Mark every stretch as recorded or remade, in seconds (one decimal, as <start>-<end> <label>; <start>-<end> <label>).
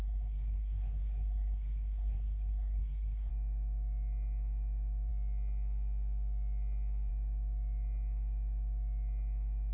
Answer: 0.0-3.3 remade; 3.3-9.7 recorded